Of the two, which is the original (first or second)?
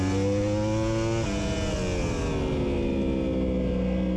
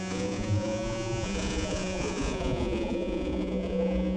first